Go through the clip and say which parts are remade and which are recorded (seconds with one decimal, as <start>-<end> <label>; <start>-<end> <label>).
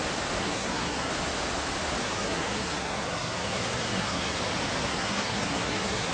0.0-0.4 recorded; 0.4-1.1 remade; 1.1-2.0 recorded; 2.0-4.4 remade; 4.4-4.9 recorded; 4.9-6.1 remade